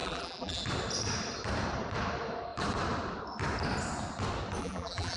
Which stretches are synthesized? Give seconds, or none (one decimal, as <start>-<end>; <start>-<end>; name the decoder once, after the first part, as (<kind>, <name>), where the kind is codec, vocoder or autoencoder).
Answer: 0.0-0.6 (vocoder, BigVGAN v2); 4.6-5.2